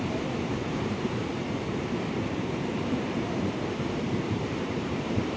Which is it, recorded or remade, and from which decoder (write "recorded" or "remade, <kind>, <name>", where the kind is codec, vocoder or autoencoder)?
remade, vocoder, BigVGAN v2